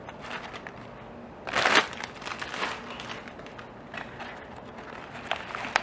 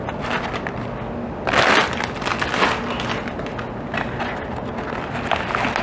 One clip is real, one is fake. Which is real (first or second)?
second